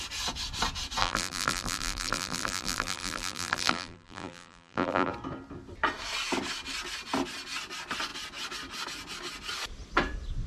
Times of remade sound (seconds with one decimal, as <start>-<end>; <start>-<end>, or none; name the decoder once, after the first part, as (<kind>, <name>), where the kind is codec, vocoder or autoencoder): 1.0-5.1 (vocoder, BigVGAN v2)